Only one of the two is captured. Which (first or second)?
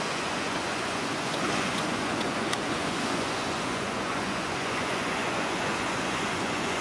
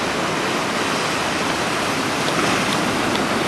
second